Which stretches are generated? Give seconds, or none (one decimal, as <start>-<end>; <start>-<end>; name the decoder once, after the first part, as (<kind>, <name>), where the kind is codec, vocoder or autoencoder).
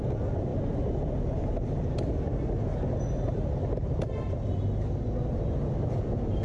none